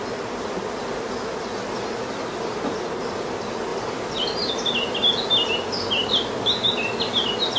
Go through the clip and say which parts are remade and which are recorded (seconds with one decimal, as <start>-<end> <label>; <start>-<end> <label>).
0.0-3.7 recorded; 3.7-4.5 remade; 4.5-7.6 recorded